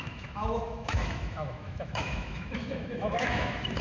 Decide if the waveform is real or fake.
fake